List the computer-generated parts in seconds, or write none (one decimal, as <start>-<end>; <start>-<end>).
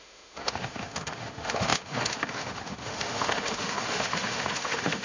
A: 0.0-5.0